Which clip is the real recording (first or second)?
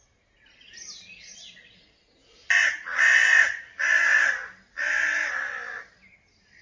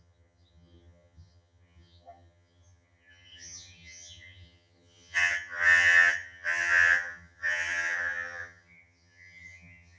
first